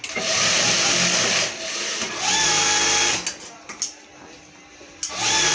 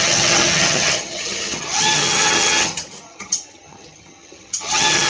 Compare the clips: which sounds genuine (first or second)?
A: first